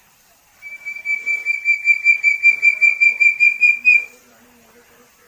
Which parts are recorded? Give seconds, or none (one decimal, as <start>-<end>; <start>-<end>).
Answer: 0.0-1.2; 4.4-5.3